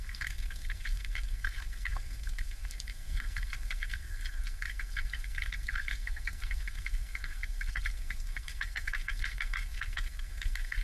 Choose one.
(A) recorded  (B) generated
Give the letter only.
B